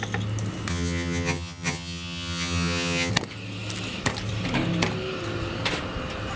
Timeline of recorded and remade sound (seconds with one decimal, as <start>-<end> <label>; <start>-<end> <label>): 0.0-0.7 recorded; 0.7-3.1 remade; 3.1-6.4 recorded